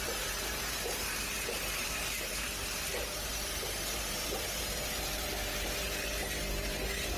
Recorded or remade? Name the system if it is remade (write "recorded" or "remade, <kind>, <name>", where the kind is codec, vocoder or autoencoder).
remade, vocoder, BigVGAN v2